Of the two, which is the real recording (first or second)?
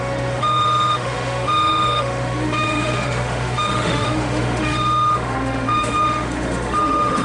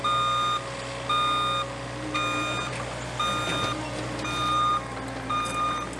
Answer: second